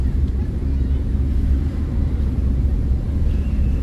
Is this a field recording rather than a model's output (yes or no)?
no